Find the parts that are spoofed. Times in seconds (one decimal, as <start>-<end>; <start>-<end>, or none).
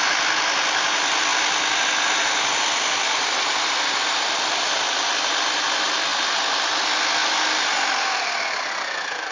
none